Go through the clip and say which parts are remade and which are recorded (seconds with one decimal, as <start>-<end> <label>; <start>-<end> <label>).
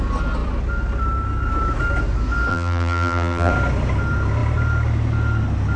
0.0-2.5 recorded; 2.5-3.5 remade; 3.5-5.8 recorded